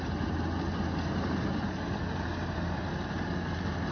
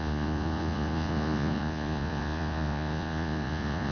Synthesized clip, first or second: second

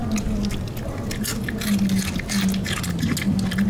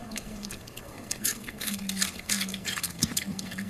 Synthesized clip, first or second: second